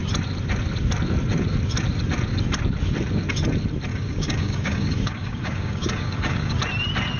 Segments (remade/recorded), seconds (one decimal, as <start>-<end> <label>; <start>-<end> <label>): 0.0-3.9 recorded; 3.9-6.6 remade; 6.6-7.2 recorded